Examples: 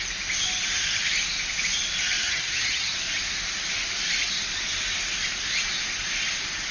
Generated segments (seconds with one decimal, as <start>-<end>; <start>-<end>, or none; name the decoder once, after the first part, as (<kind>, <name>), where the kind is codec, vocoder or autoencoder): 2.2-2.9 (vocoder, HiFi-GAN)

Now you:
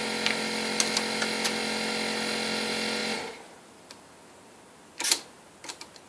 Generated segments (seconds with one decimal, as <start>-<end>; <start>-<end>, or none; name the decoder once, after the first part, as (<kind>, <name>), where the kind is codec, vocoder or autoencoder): none

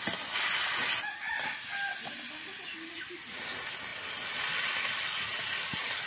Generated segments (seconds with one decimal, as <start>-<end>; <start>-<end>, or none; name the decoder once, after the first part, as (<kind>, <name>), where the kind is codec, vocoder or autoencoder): 5.3-6.1 (vocoder, BigVGAN v2)